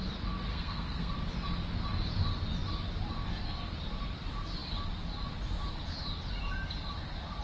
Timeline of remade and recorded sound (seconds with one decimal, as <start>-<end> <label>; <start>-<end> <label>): 0.0-0.5 recorded; 0.5-1.1 remade; 1.1-7.4 recorded